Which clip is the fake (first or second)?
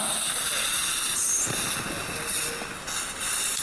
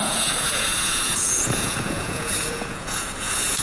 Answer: second